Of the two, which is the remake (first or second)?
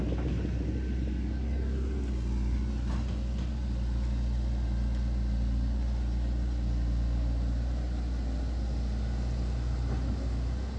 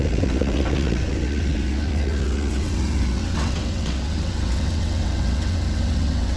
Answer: second